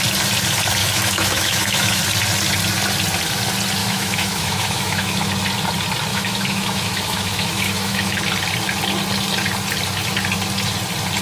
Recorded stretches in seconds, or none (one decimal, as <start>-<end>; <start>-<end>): 0.0-0.8; 2.0-3.8; 5.3-6.1; 8.2-11.2